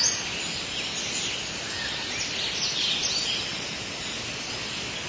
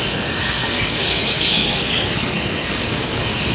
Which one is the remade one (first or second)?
second